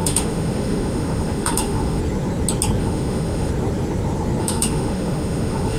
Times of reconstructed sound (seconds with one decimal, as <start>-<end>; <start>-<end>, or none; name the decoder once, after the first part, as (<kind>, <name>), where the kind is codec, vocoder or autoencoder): 0.0-2.0 (autoencoder, DAC-VAE); 2.8-3.5; 4.4-5.8

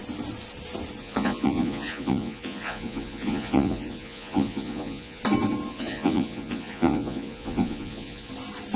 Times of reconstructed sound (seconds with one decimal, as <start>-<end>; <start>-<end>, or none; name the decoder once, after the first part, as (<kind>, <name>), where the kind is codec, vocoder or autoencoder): 1.0-5.2 (vocoder, Vocos); 5.7-8.3

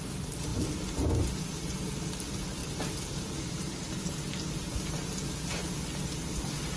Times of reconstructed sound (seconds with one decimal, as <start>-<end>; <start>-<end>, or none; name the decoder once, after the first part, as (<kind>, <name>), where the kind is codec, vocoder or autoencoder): 2.6-3.9 (vocoder, BigVGAN v2)